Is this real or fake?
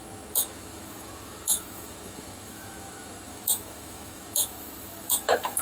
fake